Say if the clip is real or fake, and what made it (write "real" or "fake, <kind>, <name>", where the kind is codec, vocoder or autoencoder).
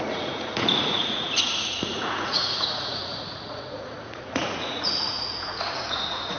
fake, vocoder, Vocos